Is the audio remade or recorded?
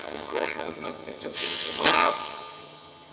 remade